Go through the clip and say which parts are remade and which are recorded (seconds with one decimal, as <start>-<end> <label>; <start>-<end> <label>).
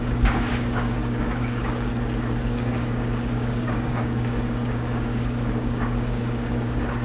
0.0-1.9 remade; 1.9-2.4 recorded; 2.4-7.0 remade